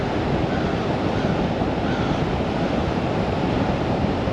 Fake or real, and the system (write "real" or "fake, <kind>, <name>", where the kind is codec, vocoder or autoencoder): real